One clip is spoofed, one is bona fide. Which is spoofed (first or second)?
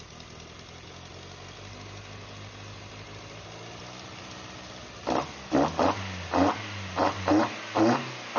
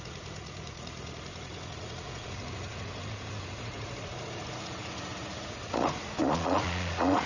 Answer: second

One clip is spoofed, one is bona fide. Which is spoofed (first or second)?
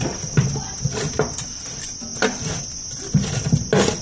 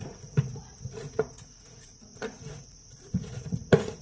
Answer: second